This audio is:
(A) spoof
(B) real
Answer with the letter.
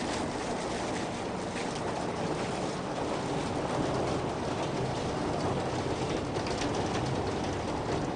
B